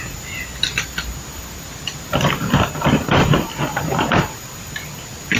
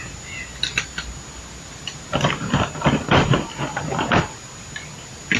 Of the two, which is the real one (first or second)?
second